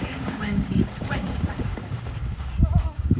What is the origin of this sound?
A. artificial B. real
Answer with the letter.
A